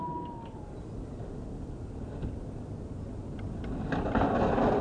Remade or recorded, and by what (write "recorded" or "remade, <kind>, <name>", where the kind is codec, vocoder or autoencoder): recorded